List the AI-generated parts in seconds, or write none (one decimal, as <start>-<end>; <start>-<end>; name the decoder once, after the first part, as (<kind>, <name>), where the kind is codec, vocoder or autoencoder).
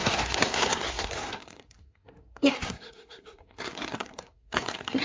0.0-5.0 (codec, SNAC)